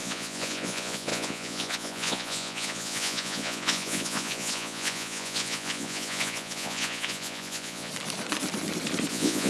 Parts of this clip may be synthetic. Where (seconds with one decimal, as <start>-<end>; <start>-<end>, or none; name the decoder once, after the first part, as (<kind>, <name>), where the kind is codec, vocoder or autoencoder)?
0.0-7.9 (vocoder, Vocos); 9.1-9.5